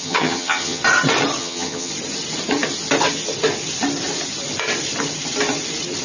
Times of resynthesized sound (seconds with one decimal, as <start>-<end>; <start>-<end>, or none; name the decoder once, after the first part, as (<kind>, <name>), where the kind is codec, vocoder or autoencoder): 0.0-0.8 (vocoder, HiFi-GAN); 1.4-1.9